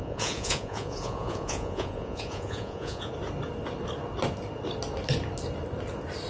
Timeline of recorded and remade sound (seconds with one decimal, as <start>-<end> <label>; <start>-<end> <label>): 0.0-3.1 remade; 3.1-6.3 recorded